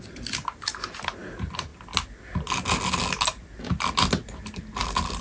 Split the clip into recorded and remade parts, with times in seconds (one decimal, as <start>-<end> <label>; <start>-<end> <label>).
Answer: 0.0-5.2 recorded